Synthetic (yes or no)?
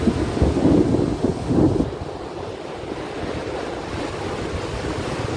no